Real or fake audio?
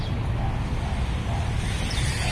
real